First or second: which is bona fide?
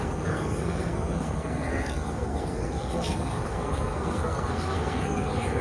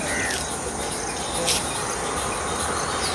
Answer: second